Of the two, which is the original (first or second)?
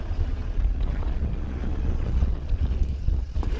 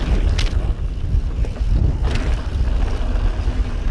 second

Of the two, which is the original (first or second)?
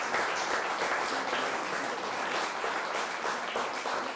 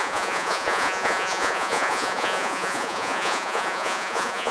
first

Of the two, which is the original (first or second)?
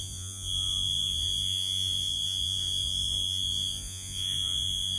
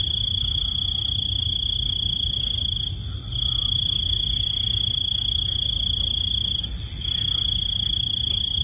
second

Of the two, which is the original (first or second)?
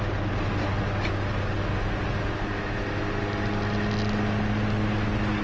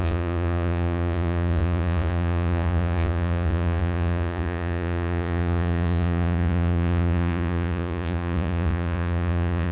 first